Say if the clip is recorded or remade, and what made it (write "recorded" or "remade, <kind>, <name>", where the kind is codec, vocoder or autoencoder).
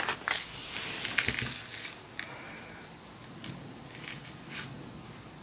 recorded